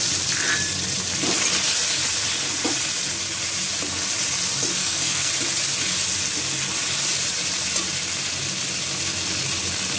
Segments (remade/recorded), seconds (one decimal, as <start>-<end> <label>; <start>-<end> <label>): 0.0-4.8 recorded; 4.8-5.3 remade; 5.3-10.0 recorded